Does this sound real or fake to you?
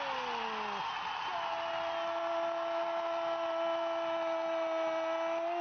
real